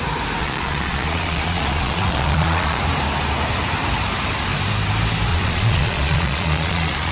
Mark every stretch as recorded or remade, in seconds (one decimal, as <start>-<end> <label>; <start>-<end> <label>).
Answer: 0.0-0.4 recorded; 0.4-2.8 remade; 2.8-5.3 recorded; 5.3-7.1 remade